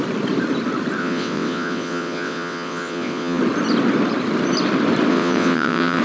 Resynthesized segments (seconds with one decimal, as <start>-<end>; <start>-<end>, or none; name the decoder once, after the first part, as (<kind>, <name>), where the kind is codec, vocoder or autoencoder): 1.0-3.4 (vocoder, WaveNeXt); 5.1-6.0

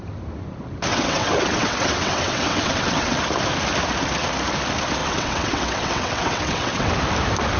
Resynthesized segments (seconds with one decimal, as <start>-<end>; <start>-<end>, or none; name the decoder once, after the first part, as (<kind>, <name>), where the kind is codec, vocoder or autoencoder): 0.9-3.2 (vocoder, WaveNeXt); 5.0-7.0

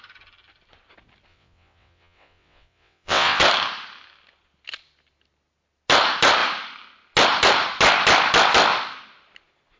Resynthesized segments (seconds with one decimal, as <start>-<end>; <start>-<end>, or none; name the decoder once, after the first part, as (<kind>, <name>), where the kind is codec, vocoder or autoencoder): 1.3-3.4 (vocoder, WaveNeXt)

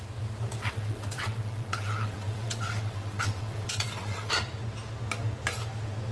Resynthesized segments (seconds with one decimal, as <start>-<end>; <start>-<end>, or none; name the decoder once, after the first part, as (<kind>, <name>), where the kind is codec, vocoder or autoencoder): 0.6-4.3 (vocoder, WaveNeXt)

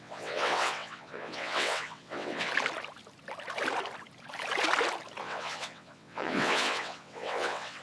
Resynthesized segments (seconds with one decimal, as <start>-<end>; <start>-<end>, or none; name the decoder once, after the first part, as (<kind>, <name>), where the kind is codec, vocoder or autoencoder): 0.0-2.5 (vocoder, WaveNeXt); 5.2-7.8

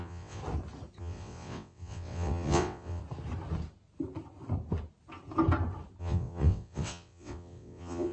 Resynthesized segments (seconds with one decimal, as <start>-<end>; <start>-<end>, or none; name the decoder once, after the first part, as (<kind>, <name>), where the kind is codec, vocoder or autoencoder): 0.0-0.4 (vocoder, WaveNeXt); 1.0-3.0; 6.0-8.1

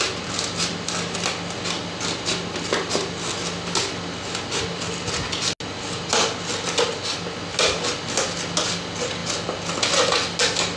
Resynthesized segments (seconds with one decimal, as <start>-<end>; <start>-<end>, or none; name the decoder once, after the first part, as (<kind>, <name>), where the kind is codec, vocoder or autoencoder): none